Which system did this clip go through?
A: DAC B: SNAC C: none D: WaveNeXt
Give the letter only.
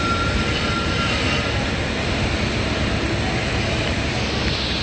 C